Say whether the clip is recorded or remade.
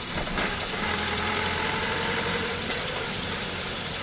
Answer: remade